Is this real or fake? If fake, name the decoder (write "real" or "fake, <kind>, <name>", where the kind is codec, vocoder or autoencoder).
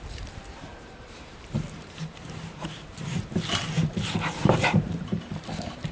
fake, vocoder, BigVGAN v2